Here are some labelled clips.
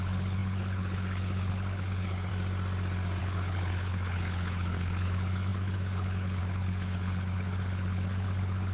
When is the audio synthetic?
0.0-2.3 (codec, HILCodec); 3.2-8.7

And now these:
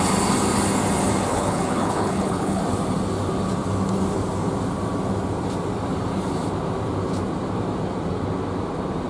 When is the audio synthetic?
1.3-2.6 (codec, HILCodec)

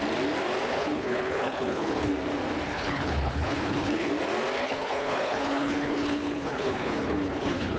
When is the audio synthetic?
0.7-2.1 (codec, HILCodec); 2.7-4.1; 4.6-7.8

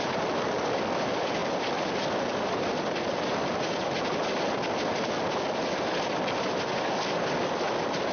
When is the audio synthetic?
none

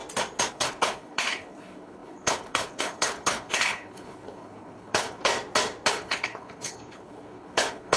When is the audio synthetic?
0.5-5.3 (codec, HILCodec); 5.9-8.0

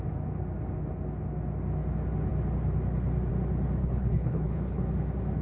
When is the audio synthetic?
3.8-4.8 (codec, HILCodec)